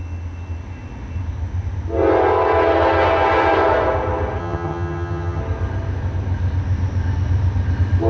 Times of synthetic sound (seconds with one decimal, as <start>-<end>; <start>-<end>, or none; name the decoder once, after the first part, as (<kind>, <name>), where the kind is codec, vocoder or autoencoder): 4.4-5.4 (vocoder, HiFi-GAN)